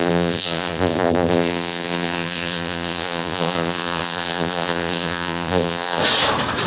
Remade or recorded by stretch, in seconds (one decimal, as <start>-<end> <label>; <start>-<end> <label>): 0.0-6.0 remade; 6.0-6.7 recorded